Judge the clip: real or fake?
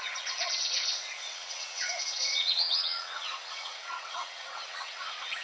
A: fake